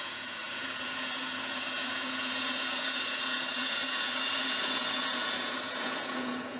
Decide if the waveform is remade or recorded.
remade